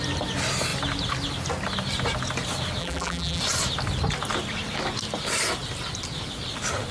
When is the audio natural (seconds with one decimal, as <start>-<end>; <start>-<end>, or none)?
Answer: 0.0-2.8; 3.4-6.9